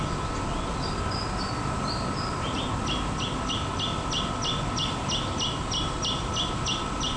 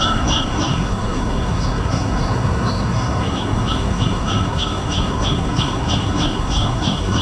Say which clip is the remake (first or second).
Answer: second